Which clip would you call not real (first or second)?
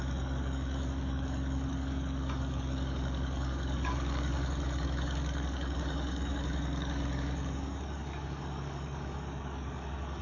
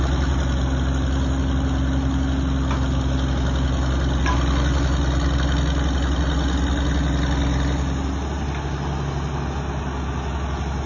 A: first